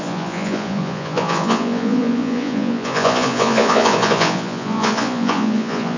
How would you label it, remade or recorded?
remade